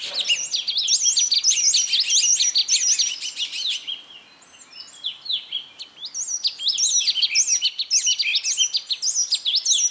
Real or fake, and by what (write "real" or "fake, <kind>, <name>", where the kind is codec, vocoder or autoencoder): real